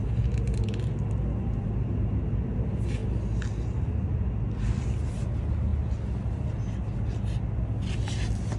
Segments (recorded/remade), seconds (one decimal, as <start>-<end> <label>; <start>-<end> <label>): 0.0-8.6 recorded